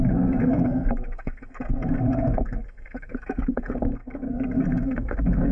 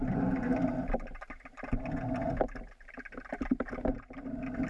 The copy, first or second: first